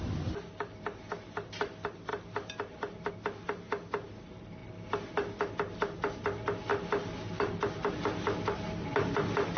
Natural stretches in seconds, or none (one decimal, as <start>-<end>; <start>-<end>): 0.0-9.6